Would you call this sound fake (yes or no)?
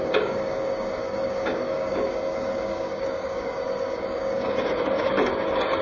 yes